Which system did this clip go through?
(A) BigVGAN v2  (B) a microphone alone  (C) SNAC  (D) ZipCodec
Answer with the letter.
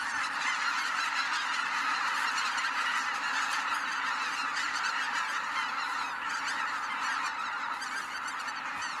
B